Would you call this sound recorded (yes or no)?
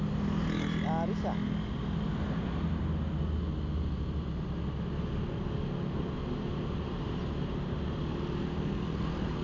yes